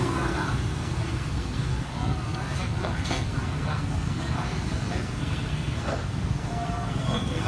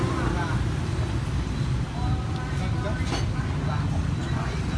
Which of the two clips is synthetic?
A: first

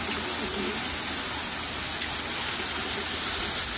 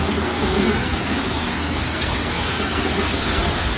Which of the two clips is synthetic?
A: second